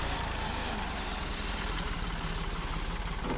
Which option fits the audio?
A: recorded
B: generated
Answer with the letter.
B